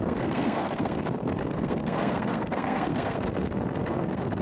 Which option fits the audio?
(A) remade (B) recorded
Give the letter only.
A